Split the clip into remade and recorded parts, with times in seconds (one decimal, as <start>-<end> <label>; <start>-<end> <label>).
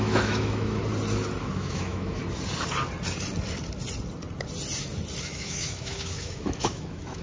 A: 0.0-0.8 remade; 0.8-1.4 recorded; 1.4-2.2 remade; 2.2-5.2 recorded; 5.2-7.2 remade